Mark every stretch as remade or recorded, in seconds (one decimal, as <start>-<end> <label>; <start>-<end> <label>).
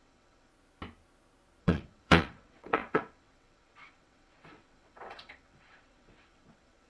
0.0-0.5 remade; 0.5-1.6 recorded; 1.6-6.9 remade